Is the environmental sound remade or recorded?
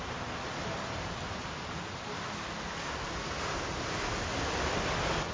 recorded